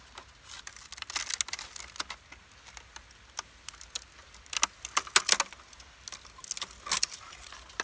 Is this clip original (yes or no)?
yes